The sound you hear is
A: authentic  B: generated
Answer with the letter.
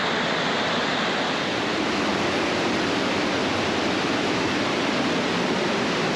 A